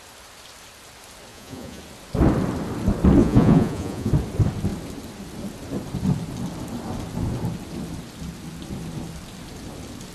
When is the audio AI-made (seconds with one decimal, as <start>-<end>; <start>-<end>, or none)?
1.3-1.8; 3.2-4.1